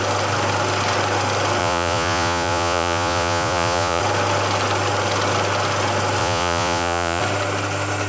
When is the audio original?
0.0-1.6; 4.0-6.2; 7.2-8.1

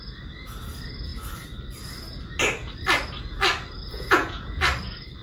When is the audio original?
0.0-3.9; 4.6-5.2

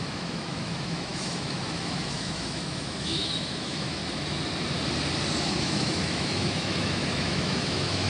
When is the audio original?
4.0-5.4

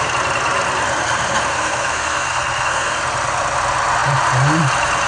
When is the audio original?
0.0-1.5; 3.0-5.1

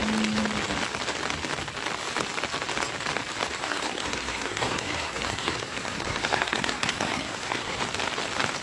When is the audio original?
0.0-3.6; 7.8-8.6

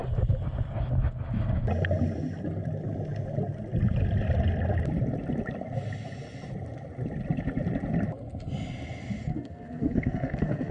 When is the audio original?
0.0-9.3